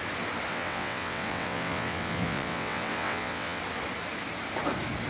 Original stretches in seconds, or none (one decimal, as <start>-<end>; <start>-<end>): 0.0-0.5; 3.6-5.1